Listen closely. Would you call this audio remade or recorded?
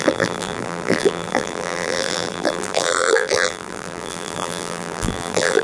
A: remade